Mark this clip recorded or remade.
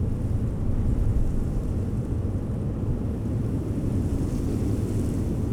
recorded